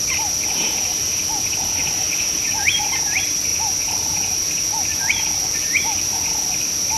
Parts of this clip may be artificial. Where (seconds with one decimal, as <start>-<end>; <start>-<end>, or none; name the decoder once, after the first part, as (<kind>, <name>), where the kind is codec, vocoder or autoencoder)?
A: 1.8-2.8 (vocoder, BigVGAN v2); 3.5-6.3